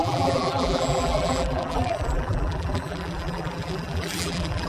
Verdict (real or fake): fake